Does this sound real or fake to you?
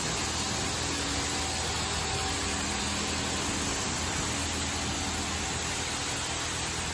real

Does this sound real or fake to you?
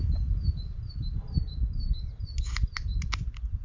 real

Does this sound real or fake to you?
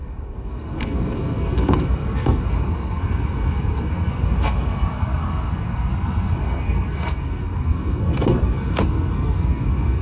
fake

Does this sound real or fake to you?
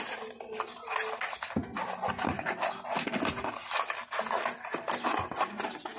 real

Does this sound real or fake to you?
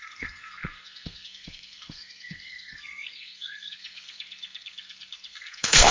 fake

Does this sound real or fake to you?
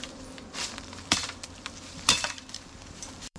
fake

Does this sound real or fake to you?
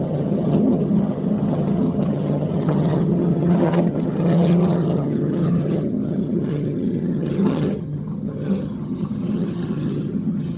fake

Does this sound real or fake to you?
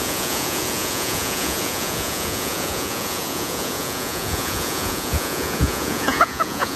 fake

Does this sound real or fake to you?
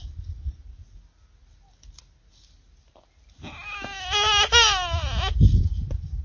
real